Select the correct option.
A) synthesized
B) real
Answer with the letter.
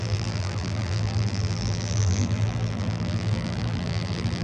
A